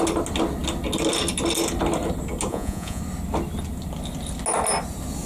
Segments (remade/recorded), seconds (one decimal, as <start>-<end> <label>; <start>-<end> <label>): 0.0-2.5 recorded; 2.5-3.0 remade; 3.0-5.3 recorded